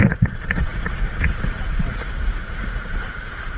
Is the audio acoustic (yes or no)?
no